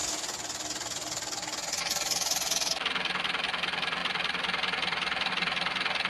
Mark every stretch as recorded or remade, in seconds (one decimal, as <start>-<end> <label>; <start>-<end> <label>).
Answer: 0.0-6.1 recorded